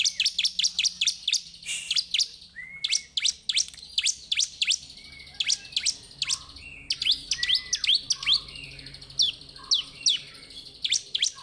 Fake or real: real